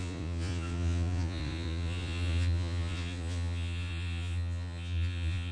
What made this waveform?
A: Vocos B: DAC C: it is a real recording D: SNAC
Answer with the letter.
A